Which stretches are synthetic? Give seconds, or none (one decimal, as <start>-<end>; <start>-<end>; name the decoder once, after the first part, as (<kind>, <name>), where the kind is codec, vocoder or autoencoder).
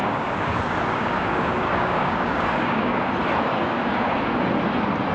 0.0-3.1 (codec, DAC); 3.5-4.1